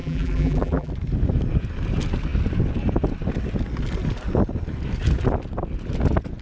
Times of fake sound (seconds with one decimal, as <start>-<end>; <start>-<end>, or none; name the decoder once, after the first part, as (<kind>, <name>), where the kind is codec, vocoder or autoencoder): 0.0-0.9 (vocoder, BigVGAN v2)